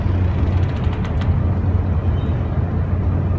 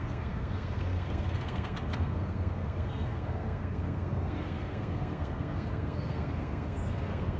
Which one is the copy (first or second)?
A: second